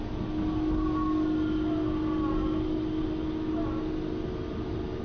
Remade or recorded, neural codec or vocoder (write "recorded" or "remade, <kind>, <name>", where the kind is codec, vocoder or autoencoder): recorded